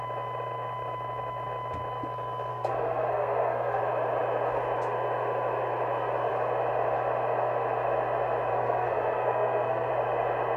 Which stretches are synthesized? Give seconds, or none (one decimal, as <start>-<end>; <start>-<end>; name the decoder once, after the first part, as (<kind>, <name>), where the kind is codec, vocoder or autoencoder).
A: 2.5-3.8 (codec, SNAC); 8.5-9.9